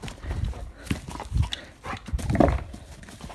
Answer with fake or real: real